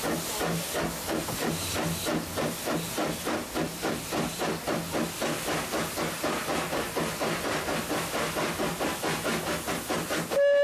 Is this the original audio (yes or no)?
yes